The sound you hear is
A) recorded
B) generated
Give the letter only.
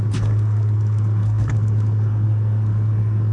B